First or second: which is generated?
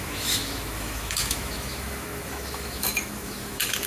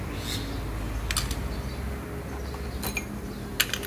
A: first